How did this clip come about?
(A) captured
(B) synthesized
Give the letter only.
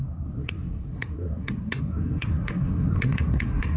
B